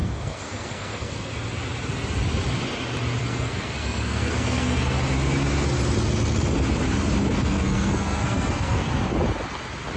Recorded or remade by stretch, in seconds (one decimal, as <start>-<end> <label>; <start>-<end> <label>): 0.0-1.3 remade; 1.3-3.2 recorded; 3.2-5.0 remade; 5.0-7.2 recorded; 7.2-8.9 remade; 8.9-10.0 recorded